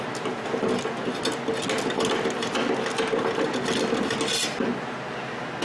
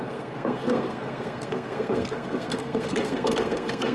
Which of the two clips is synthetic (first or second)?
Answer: second